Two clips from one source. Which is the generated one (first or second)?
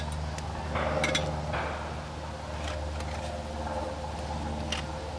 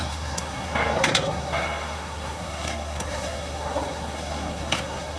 second